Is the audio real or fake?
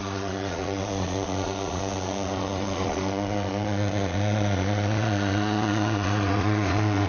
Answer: fake